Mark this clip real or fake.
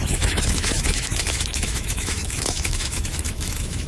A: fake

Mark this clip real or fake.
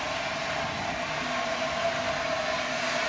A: real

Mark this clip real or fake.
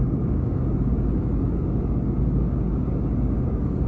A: fake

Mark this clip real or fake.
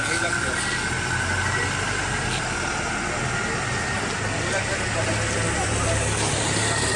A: real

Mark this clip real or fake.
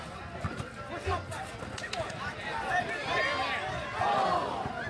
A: real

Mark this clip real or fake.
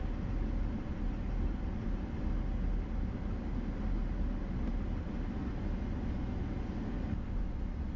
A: real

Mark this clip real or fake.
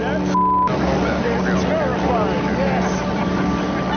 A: real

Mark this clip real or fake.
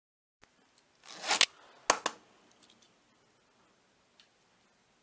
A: real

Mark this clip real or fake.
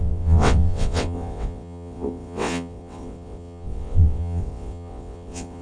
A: fake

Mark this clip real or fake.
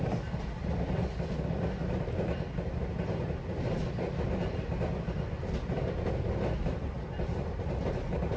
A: real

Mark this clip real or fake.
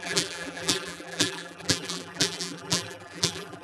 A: fake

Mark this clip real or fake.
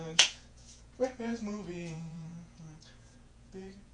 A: fake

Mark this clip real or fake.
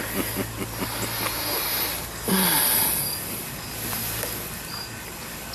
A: real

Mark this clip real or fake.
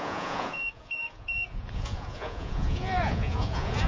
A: fake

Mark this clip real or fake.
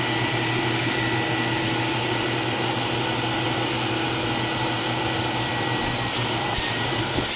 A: real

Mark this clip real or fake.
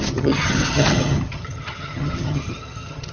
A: fake